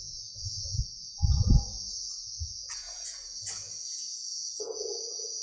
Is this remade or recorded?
remade